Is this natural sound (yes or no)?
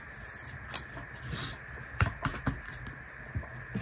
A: yes